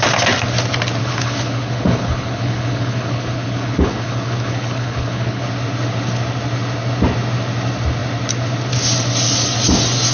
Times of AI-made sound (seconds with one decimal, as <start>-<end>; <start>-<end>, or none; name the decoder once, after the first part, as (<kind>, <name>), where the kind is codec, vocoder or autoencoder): 1.0-5.4 (codec, HILCodec)